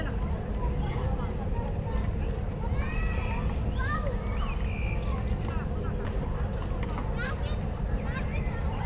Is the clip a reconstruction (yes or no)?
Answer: no